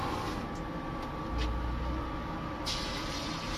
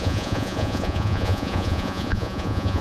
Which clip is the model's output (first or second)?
second